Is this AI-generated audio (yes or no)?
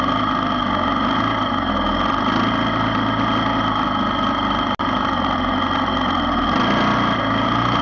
no